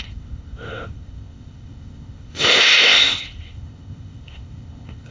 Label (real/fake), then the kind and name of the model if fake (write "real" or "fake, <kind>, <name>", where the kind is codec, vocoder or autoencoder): fake, codec, ZipCodec